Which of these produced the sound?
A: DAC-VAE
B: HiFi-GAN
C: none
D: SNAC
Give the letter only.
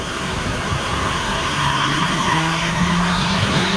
D